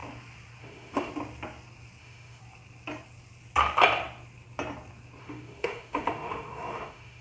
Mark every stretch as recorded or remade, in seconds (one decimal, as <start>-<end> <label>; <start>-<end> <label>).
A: 0.0-0.6 recorded; 0.6-1.1 remade; 1.1-2.0 recorded; 2.0-2.4 remade; 2.4-5.2 recorded; 5.2-7.2 remade